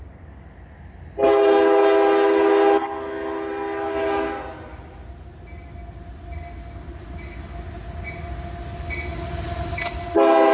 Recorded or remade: recorded